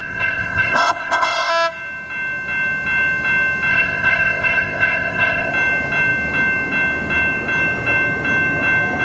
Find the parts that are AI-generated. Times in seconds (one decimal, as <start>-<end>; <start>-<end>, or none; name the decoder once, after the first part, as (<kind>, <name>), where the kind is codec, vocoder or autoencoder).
0.0-1.5 (codec, ZipCodec); 3.7-5.5